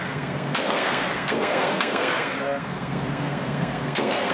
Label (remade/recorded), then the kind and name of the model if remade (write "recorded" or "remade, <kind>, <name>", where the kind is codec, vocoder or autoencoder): remade, codec, SNAC